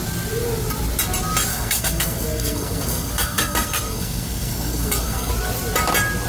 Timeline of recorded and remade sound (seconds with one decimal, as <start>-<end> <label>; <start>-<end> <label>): 0.0-1.5 recorded; 1.5-5.3 remade; 5.3-6.3 recorded